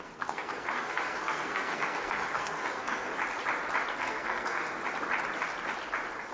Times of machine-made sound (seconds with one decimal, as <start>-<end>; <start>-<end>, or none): 0.0-3.1; 3.9-4.8